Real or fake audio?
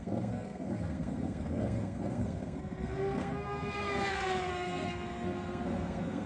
fake